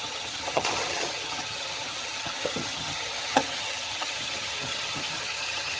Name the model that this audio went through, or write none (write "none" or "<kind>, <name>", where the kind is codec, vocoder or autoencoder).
vocoder, HiFi-GAN